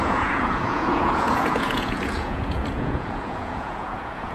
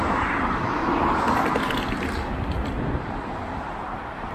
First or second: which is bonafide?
second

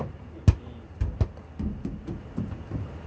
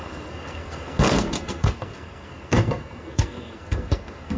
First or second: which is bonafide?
first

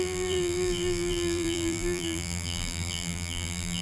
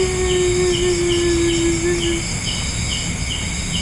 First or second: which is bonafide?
second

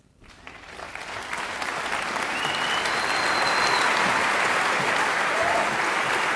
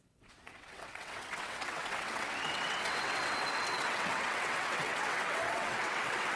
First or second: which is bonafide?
first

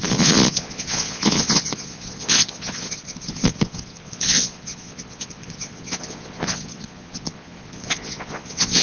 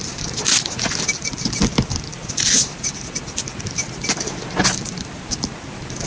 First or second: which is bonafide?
second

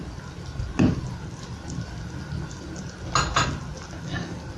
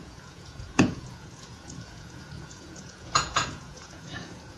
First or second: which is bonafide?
first